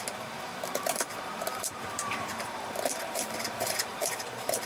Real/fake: fake